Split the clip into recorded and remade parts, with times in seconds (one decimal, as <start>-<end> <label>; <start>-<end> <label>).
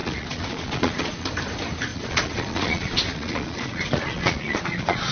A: 0.0-1.3 remade; 1.3-1.9 recorded; 1.9-5.1 remade